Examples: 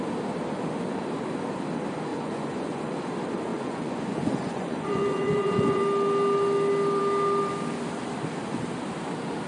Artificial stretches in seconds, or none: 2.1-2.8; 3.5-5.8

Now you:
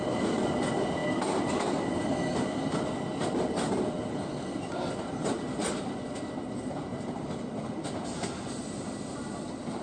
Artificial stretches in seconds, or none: none

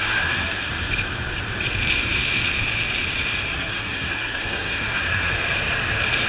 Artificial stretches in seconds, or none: 0.0-0.7; 3.5-5.3

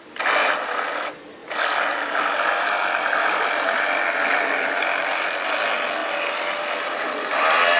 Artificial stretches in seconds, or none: 6.0-7.3

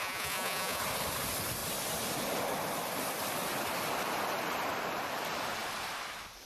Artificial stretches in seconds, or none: 0.0-0.8

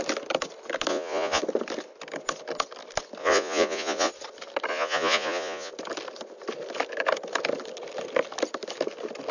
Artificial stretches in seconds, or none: 0.9-1.4; 3.2-4.1; 4.7-5.7

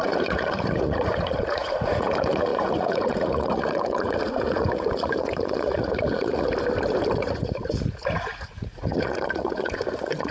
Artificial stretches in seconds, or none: 0.0-6.5; 7.2-10.3

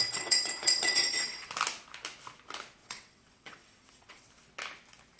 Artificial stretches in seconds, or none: 0.0-1.5; 2.8-4.3